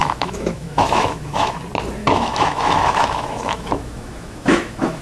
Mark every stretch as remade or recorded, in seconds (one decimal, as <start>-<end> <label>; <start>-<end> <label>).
0.0-1.6 remade; 1.6-2.0 recorded; 2.0-5.0 remade